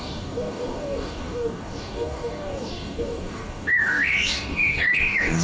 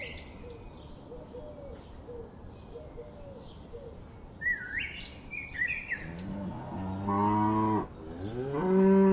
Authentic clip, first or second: second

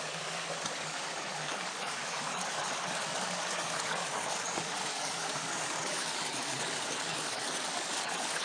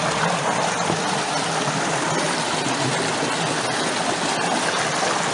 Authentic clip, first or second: second